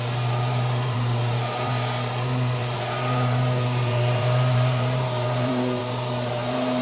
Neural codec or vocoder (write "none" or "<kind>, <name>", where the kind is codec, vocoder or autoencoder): vocoder, BigVGAN v2